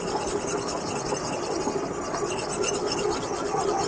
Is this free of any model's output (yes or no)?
yes